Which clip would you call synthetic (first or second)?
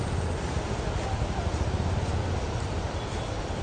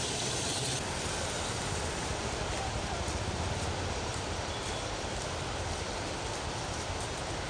second